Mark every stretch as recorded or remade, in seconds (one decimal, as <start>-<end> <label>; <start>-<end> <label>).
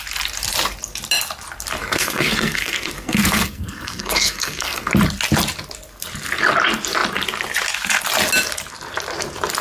0.0-1.8 recorded; 1.8-4.9 remade; 4.9-9.6 recorded